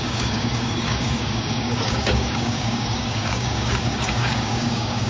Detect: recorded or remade remade